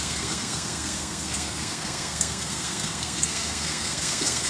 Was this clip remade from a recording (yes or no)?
yes